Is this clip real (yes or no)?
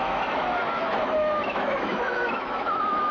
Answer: no